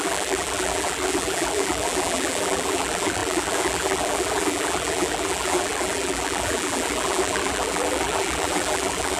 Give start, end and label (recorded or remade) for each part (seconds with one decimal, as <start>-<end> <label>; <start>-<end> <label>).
0.0-9.2 remade